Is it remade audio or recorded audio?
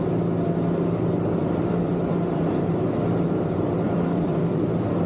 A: recorded